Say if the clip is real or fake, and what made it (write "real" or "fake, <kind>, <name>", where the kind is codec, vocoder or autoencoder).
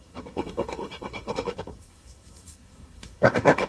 fake, codec, SNAC